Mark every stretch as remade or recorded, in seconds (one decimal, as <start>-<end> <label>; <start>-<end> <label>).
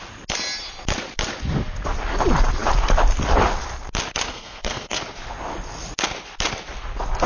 0.0-4.3 recorded; 4.3-5.0 remade; 5.0-7.3 recorded